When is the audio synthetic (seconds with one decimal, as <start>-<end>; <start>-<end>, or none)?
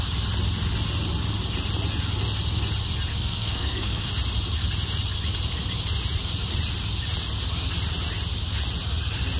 3.1-4.1